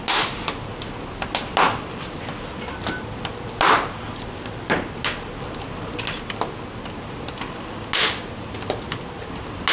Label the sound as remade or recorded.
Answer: recorded